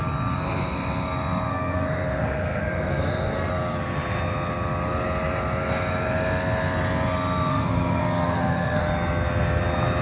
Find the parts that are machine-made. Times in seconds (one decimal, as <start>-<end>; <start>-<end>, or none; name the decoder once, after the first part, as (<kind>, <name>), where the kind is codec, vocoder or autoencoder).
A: 1.5-3.5 (codec, SNAC); 7.5-8.9